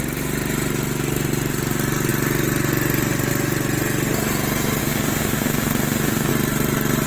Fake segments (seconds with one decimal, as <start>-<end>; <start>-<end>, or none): 4.8-6.3